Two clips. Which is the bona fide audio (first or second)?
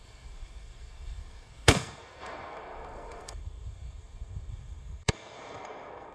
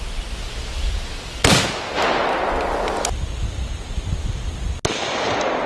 second